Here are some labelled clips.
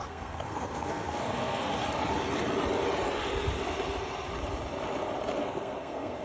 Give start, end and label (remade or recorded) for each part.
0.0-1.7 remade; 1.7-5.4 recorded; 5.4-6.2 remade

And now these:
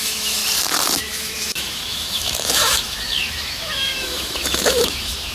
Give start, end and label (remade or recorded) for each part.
0.0-0.4 remade; 0.4-1.0 recorded; 1.0-5.3 remade

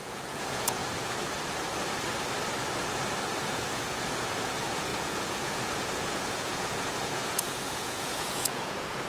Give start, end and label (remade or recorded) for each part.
0.0-0.8 remade; 0.8-3.4 recorded; 3.4-9.1 remade

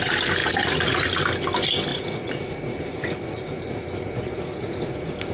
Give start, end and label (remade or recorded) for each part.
0.0-0.4 recorded; 0.4-1.2 remade; 1.2-1.9 recorded; 1.9-5.3 remade

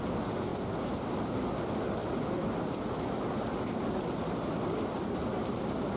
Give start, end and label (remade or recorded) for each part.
0.0-2.0 recorded; 2.0-5.6 remade; 5.6-6.0 recorded

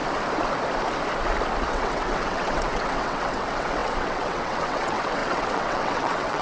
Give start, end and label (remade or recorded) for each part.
0.0-1.7 recorded; 1.7-6.4 remade

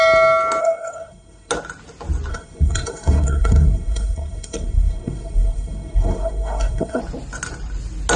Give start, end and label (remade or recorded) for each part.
0.0-0.6 recorded; 0.6-1.5 remade; 1.5-2.3 recorded; 2.3-7.0 remade; 7.0-8.2 recorded

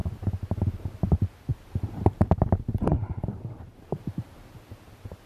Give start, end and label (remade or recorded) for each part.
0.0-1.5 recorded; 1.5-4.4 remade; 4.4-5.3 recorded